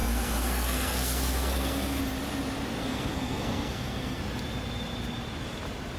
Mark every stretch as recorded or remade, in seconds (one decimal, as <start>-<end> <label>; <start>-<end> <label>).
0.0-2.0 remade; 2.0-2.8 recorded; 2.8-4.2 remade; 4.2-6.0 recorded

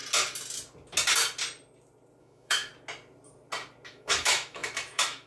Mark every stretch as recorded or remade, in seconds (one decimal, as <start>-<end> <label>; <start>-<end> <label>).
0.0-2.2 recorded; 2.2-2.7 remade; 2.7-3.9 recorded; 3.9-5.3 remade

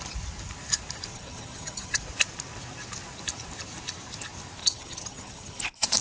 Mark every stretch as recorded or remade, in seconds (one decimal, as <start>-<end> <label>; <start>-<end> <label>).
0.0-1.1 recorded; 1.1-2.0 remade; 2.0-4.6 recorded; 4.6-5.6 remade; 5.6-6.0 recorded

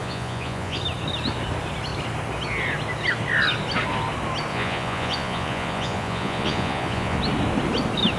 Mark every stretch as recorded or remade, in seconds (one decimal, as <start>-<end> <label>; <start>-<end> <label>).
0.0-0.8 remade; 0.8-4.5 recorded; 4.5-7.2 remade; 7.2-8.2 recorded

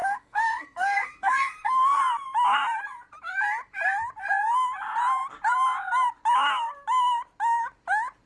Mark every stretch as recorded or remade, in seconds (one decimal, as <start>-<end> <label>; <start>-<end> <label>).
0.0-2.0 remade; 2.0-8.3 recorded

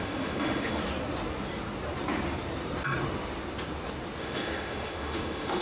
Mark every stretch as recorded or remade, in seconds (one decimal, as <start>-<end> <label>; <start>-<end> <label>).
0.0-0.8 remade; 0.8-4.2 recorded; 4.2-5.6 remade

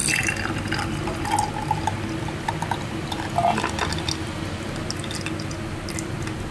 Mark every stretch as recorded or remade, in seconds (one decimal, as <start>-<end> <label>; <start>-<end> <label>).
0.0-6.5 recorded

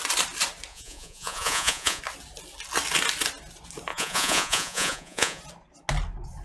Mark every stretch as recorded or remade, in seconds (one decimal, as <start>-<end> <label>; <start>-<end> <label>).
0.0-0.7 recorded; 0.7-2.0 remade; 2.0-3.9 recorded; 3.9-5.4 remade; 5.4-6.4 recorded